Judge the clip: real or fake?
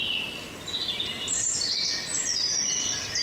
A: real